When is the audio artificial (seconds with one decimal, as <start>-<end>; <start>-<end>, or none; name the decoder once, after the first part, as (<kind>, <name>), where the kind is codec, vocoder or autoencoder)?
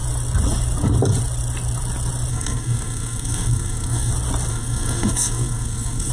2.3-4.1 (codec, SNAC); 4.5-6.1